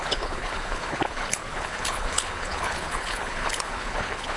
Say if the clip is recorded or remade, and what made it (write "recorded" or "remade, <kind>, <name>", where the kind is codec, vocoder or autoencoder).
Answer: remade, codec, HILCodec